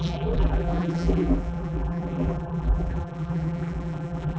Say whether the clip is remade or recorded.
remade